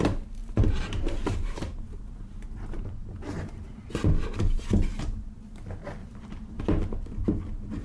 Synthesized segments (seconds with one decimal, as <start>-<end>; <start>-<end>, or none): 0.4-4.1; 6.0-6.6